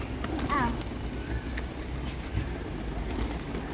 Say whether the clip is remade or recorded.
recorded